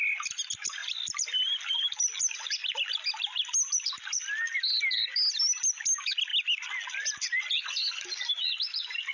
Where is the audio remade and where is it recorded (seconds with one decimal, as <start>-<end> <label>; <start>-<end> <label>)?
0.0-9.1 recorded